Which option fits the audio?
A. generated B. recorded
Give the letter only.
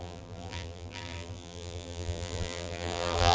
A